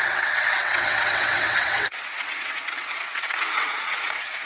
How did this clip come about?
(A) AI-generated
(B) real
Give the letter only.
A